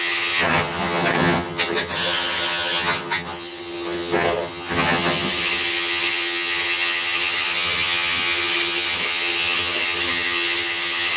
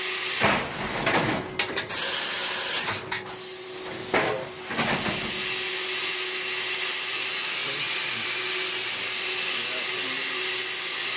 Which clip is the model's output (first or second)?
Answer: first